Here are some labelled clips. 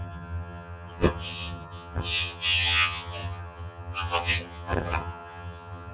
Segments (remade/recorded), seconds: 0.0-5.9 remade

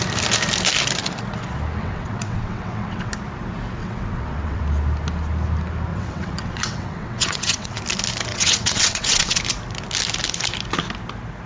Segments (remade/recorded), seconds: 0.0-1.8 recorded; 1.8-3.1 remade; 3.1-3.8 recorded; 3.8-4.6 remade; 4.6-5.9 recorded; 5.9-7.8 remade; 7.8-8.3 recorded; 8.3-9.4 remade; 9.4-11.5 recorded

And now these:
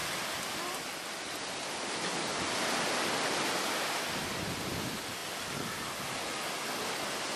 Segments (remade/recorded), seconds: 0.0-1.6 remade; 1.6-7.4 recorded

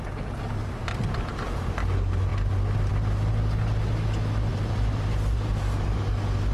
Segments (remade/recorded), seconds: 0.0-0.6 recorded; 0.6-1.5 remade; 1.5-4.5 recorded; 4.5-6.0 remade; 6.0-6.5 recorded

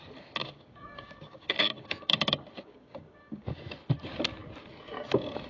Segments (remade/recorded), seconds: 0.0-0.4 recorded; 0.4-3.7 remade; 3.7-5.5 recorded